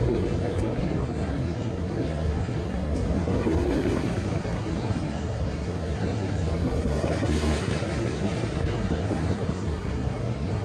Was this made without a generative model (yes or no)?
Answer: no